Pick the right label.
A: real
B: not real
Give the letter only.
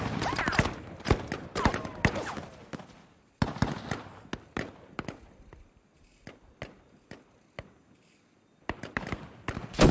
A